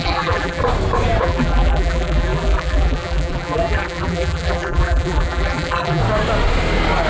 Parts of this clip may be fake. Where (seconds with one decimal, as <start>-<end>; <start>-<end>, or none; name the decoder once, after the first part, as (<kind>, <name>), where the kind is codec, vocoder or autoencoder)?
0.0-0.6 (vocoder, BigVGAN v2); 1.2-6.0